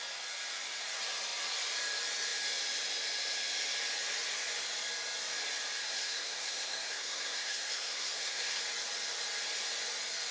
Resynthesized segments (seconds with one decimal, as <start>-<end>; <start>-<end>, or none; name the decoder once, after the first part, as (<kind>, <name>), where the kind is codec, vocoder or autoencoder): 5.8-8.6 (codec, SNAC)